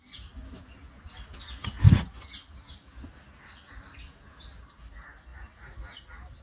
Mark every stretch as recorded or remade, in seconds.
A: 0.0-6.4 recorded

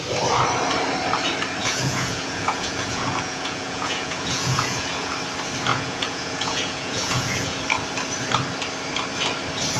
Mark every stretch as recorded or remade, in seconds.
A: 0.0-1.6 recorded; 1.6-5.1 remade; 5.1-5.7 recorded; 5.7-7.6 remade; 7.6-9.8 recorded

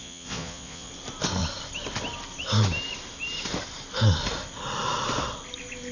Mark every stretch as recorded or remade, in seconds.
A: 0.0-0.9 remade; 0.9-5.9 recorded

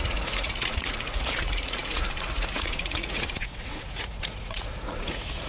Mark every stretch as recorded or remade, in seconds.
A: 0.0-5.5 remade

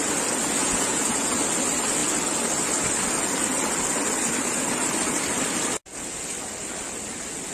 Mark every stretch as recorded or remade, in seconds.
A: 0.0-0.6 recorded; 0.6-1.4 remade; 1.4-7.5 recorded

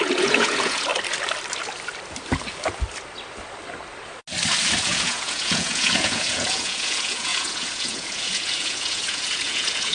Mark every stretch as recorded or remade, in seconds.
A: 0.0-0.9 remade; 0.9-4.8 recorded; 4.8-9.9 remade